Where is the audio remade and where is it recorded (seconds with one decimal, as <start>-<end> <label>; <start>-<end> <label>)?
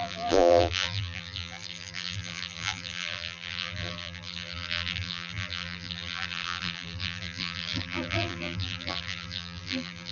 0.0-10.1 remade